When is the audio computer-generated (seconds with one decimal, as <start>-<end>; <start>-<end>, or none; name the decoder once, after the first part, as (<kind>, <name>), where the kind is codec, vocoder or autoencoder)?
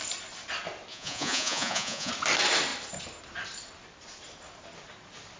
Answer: 0.9-2.1 (vocoder, Vocos)